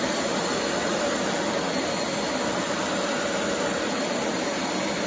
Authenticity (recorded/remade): remade